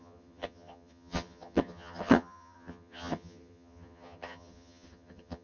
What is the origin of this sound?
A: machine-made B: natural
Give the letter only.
A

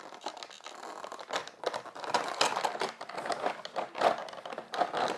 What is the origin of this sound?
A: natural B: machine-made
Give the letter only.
A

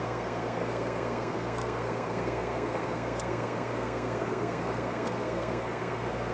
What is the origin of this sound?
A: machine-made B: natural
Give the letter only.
A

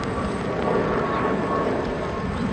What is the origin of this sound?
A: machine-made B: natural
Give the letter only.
B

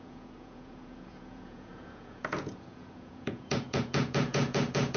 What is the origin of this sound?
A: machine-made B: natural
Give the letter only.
A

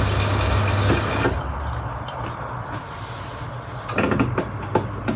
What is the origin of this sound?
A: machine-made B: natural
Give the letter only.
B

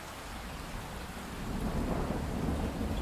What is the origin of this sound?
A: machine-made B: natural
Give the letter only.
B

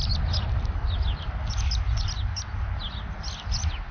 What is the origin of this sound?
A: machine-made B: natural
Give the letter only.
B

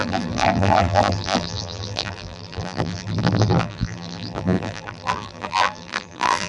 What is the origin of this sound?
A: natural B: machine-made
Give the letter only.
B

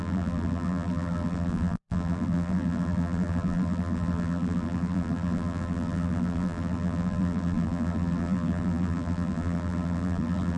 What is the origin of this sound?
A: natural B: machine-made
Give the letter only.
B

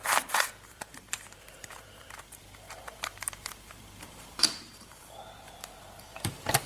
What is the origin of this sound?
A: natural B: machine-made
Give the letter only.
B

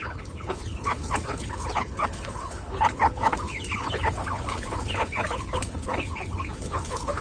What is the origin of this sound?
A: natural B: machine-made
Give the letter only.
B